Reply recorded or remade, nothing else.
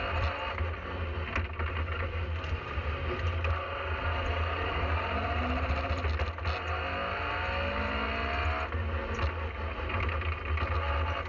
recorded